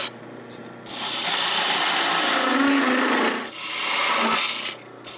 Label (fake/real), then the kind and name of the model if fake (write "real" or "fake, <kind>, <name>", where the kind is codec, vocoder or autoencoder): real